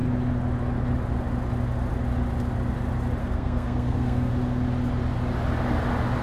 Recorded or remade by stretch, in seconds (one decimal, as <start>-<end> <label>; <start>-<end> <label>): 0.0-3.2 recorded; 3.2-4.3 remade; 4.3-6.2 recorded